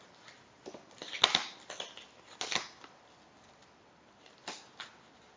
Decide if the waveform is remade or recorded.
recorded